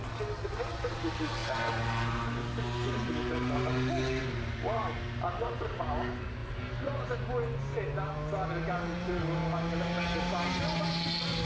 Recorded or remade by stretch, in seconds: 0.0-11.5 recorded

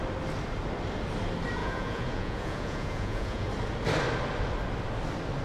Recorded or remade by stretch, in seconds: 0.0-1.6 recorded; 1.6-3.5 remade; 3.5-5.4 recorded

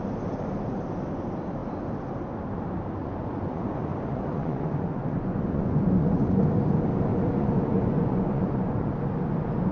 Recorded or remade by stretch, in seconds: 0.0-3.0 recorded; 3.0-6.4 remade; 6.4-7.1 recorded; 7.1-8.9 remade; 8.9-9.7 recorded

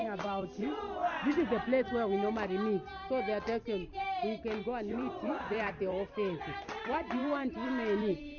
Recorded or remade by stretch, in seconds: 0.0-1.0 remade; 1.0-4.6 recorded; 4.6-8.4 remade

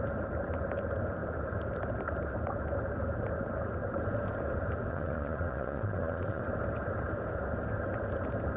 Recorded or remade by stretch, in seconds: 0.0-4.9 recorded; 4.9-6.4 remade; 6.4-8.6 recorded

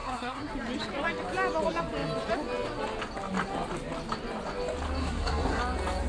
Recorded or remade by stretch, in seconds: 0.0-0.5 remade; 0.5-5.0 recorded; 5.0-5.6 remade; 5.6-6.1 recorded